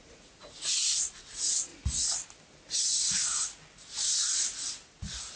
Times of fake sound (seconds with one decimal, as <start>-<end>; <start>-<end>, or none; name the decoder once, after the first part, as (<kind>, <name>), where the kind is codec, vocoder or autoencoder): 0.0-1.7 (vocoder, Vocos); 4.9-5.4